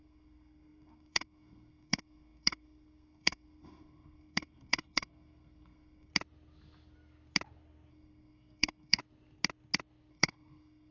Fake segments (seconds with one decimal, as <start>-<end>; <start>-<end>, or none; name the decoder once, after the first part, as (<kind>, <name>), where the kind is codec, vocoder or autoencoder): 0.0-6.1 (codec, SNAC); 7.9-9.0; 10.1-10.9